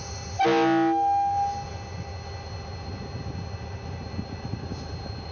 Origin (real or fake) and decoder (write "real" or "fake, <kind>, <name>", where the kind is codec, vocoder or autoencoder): real